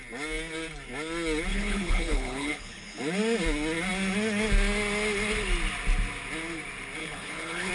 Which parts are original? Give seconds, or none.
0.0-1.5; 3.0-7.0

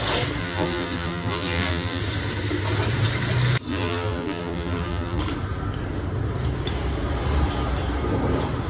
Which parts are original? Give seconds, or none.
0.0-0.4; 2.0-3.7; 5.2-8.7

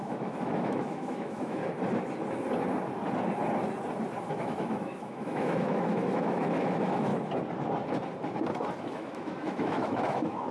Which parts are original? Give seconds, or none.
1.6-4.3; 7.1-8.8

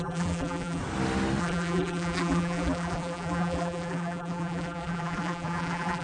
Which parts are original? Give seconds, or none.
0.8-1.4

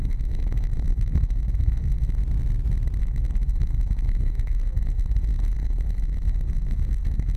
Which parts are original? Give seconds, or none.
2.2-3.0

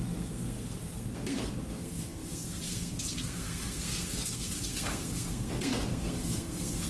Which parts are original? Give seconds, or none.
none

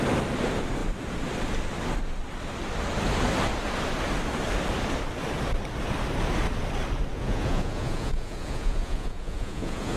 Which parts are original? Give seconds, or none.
0.0-7.1